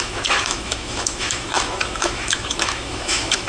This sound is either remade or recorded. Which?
remade